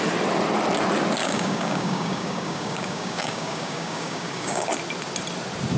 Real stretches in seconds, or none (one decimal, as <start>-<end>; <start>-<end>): 0.0-1.2; 4.7-5.8